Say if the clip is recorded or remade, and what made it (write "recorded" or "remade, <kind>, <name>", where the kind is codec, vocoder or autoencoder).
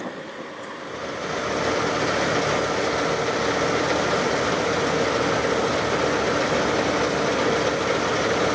recorded